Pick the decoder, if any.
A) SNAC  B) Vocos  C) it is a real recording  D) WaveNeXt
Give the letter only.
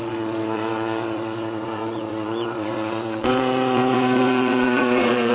B